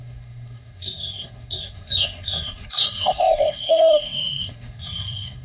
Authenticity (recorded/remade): remade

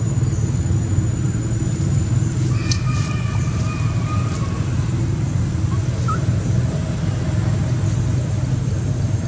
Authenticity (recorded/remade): recorded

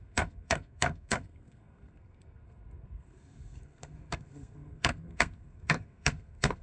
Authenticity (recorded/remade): remade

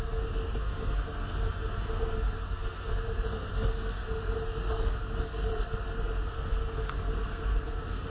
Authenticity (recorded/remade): remade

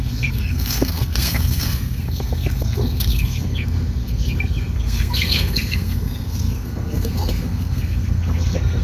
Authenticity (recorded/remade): remade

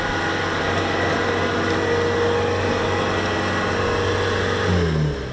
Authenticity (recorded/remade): recorded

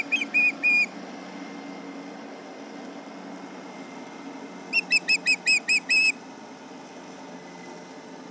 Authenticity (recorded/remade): recorded